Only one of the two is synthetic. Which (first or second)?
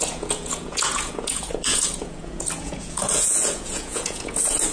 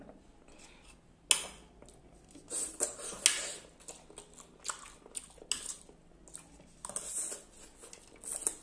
first